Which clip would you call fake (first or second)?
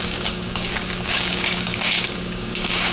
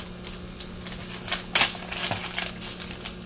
first